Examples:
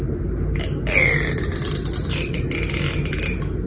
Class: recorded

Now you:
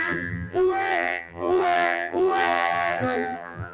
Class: remade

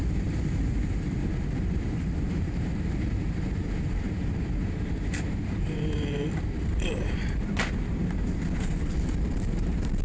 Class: remade